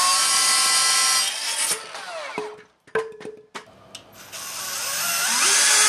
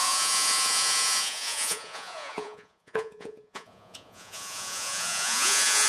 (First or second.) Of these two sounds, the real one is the first